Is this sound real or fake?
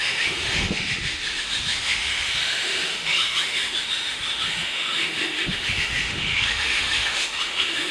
fake